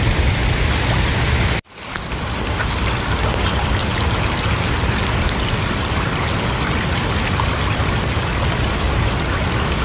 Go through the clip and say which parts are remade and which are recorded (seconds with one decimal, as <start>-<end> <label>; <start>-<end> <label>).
0.0-9.8 recorded